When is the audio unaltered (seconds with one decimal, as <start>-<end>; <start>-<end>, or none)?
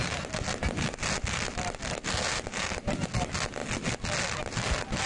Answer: 0.0-5.1